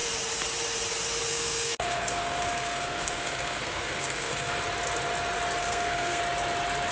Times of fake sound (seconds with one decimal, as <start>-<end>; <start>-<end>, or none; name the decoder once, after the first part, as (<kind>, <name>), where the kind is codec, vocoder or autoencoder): 1.3-4.6 (codec, SNAC); 5.6-6.2